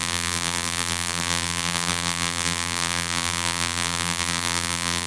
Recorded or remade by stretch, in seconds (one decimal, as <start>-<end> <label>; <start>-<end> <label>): 0.0-5.1 remade